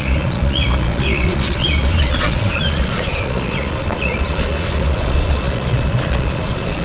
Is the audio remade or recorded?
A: remade